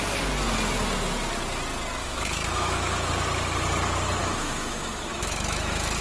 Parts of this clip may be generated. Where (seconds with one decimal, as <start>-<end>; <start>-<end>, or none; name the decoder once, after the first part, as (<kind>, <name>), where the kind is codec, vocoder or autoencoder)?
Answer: 2.0-3.1 (autoencoder, DAC-VAE); 4.2-6.0